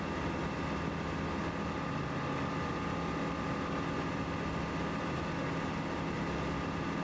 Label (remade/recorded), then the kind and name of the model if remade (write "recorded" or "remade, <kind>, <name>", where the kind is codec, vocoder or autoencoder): recorded